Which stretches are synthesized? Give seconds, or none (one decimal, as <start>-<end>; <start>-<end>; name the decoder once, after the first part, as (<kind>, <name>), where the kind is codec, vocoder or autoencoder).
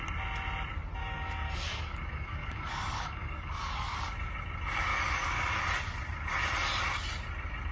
1.0-4.0 (codec, DAC); 4.9-5.6